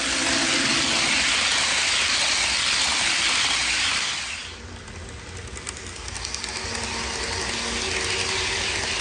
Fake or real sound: real